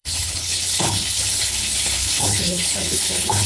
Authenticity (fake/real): fake